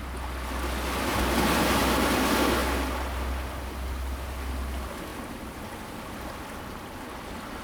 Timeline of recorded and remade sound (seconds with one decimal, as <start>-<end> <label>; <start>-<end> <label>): 0.0-7.6 recorded